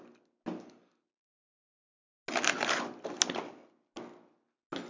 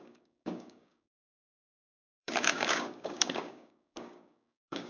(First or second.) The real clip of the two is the first